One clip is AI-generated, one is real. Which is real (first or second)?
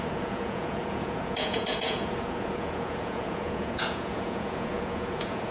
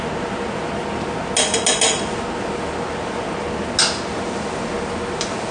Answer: second